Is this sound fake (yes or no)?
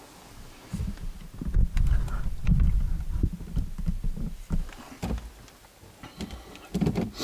no